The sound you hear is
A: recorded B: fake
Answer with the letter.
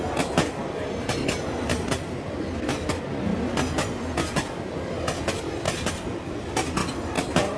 A